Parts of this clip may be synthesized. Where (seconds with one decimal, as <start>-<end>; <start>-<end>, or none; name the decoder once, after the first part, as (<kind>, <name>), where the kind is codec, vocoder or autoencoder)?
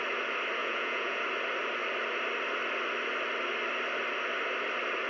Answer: 0.6-1.2 (vocoder, Vocos)